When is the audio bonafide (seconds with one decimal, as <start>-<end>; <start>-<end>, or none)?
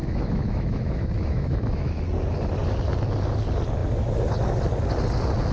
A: 2.0-5.5